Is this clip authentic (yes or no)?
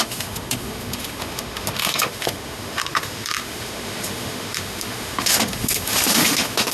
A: no